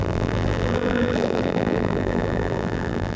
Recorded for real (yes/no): no